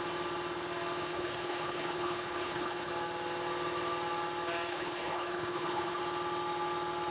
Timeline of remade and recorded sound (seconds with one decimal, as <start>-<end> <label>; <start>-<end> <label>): 0.0-1.0 recorded; 1.0-2.9 remade; 2.9-4.7 recorded; 4.7-6.0 remade; 6.0-7.1 recorded

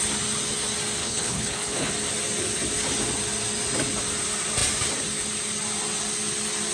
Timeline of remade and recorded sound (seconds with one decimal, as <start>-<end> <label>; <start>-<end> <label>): 0.0-1.0 recorded; 1.0-1.9 remade; 1.9-6.7 recorded

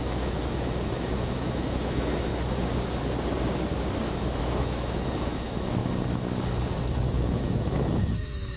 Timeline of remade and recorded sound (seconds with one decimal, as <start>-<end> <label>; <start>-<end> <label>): 0.0-2.3 remade; 2.3-4.4 recorded; 4.4-5.8 remade; 5.8-7.1 recorded; 7.1-8.6 remade

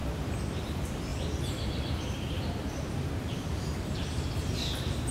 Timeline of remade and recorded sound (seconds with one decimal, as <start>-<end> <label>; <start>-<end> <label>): 0.0-1.1 recorded; 1.1-4.2 remade; 4.2-5.1 recorded

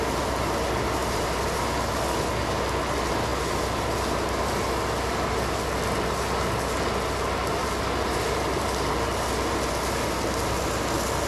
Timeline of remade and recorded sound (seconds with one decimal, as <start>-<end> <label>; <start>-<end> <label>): 0.0-1.0 recorded; 1.0-1.6 remade; 1.6-11.3 recorded

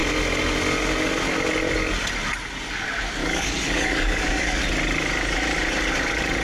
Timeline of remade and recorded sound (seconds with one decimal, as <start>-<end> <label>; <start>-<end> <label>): 0.0-3.2 recorded; 3.2-4.6 remade; 4.6-6.4 recorded

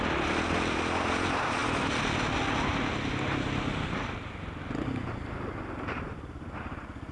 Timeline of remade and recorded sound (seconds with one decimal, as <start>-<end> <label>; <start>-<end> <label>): 0.0-1.6 remade; 1.6-5.9 recorded; 5.9-7.1 remade

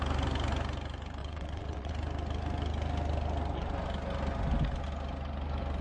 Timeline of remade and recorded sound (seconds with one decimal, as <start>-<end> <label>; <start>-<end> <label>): 0.0-1.2 recorded; 1.2-1.9 remade; 1.9-5.8 recorded